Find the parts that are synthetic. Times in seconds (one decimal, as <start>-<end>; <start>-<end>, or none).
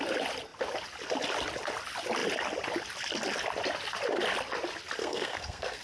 5.0-5.8